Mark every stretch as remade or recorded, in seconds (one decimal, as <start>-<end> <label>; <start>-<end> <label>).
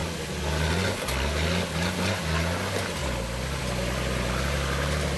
0.0-5.2 recorded